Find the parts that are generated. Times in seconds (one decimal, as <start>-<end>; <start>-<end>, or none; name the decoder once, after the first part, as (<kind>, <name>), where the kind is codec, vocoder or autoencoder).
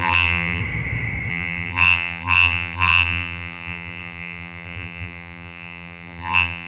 0.0-0.6 (vocoder, BigVGAN v2); 1.3-6.7